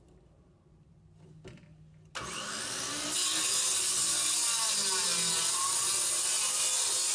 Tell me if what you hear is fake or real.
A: real